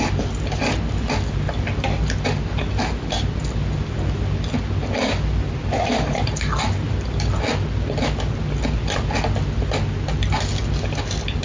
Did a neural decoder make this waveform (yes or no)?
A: no